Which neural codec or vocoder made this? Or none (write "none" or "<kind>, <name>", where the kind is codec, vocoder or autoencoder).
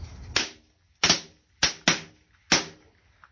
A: none